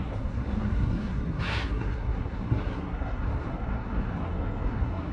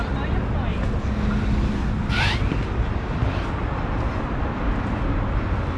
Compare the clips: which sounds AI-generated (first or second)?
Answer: first